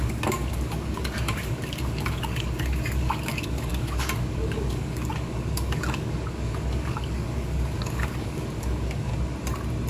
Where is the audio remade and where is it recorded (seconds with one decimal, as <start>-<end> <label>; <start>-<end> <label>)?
0.0-9.1 remade; 9.1-9.9 recorded

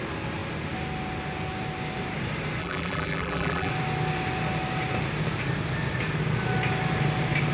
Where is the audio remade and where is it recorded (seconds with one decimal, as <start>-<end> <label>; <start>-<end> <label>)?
0.0-2.6 recorded; 2.6-3.7 remade; 3.7-7.5 recorded

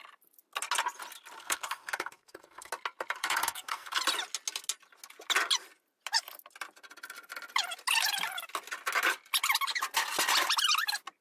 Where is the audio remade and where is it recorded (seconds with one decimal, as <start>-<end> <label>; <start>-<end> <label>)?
0.0-1.4 recorded; 1.4-2.7 remade; 2.7-3.2 recorded; 3.2-4.0 remade; 4.0-11.2 recorded

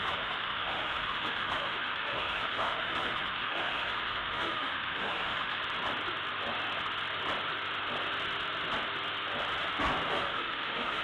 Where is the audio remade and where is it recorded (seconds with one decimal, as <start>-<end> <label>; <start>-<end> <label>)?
0.0-5.6 remade; 5.6-10.1 recorded; 10.1-11.0 remade